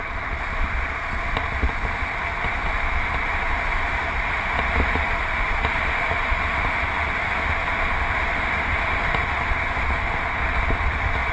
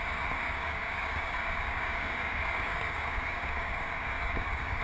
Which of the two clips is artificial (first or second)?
second